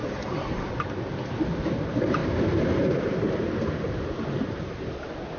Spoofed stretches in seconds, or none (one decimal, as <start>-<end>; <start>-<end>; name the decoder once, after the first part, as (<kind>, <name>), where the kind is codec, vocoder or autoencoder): none